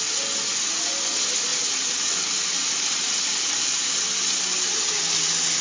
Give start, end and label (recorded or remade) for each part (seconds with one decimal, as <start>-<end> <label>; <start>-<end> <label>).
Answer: 0.0-5.6 recorded